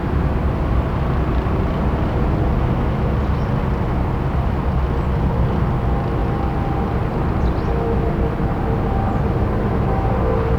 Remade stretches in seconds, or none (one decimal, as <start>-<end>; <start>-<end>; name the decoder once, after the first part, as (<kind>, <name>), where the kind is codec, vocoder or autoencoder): none

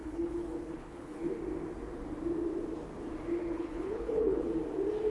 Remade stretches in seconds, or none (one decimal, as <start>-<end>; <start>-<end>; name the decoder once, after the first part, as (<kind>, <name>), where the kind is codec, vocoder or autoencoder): 0.0-1.3 (codec, HILCodec); 3.4-4.4

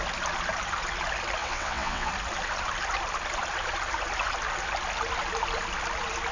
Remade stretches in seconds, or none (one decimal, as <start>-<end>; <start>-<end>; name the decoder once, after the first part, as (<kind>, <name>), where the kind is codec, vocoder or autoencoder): 1.4-2.1 (vocoder, WaveNeXt)

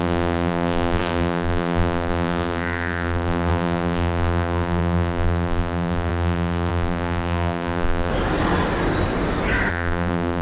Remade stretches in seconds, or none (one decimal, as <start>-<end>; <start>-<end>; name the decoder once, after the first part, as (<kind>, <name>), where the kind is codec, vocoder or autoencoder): 0.0-8.1 (vocoder, BigVGAN v2); 9.7-10.4

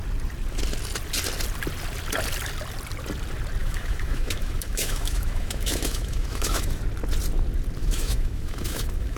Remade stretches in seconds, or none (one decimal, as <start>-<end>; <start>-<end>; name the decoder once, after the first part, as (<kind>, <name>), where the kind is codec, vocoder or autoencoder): 3.6-6.8 (autoencoder, DAC-VAE); 7.8-9.2

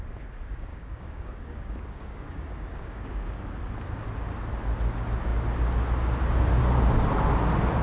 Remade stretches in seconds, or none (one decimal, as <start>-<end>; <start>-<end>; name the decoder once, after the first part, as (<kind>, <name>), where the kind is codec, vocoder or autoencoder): 0.7-3.4 (codec, DAC)

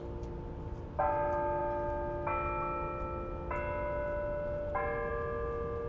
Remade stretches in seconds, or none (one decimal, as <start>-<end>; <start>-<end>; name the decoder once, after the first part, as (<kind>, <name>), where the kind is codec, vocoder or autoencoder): none